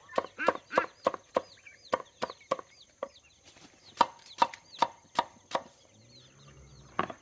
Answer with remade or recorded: recorded